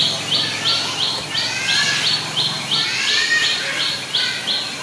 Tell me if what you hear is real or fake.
real